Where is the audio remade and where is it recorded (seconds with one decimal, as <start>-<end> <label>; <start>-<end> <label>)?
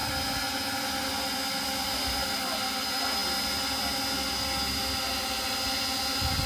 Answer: 0.0-0.8 recorded; 0.8-3.2 remade; 3.2-6.1 recorded; 6.1-6.5 remade